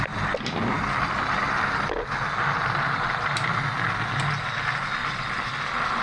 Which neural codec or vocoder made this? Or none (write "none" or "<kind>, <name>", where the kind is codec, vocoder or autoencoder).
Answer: none